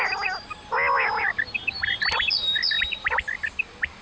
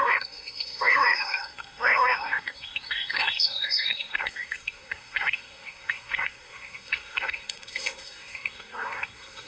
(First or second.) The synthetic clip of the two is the second